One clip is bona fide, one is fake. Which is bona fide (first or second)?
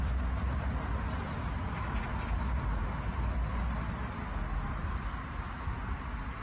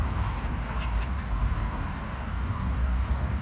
first